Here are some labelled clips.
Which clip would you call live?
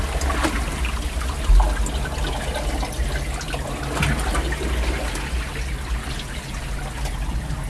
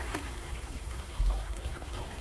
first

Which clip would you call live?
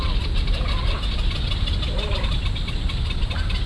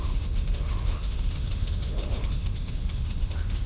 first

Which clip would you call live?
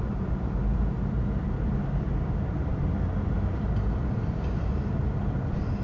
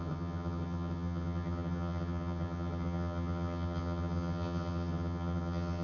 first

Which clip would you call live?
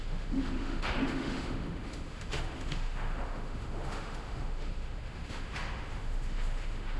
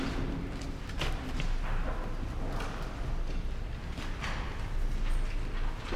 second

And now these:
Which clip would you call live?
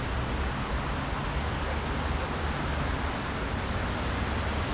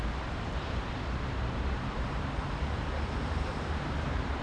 first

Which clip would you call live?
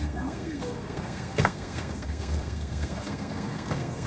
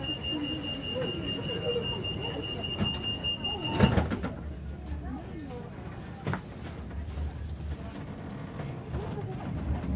second